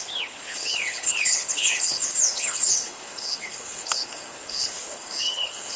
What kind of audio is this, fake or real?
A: fake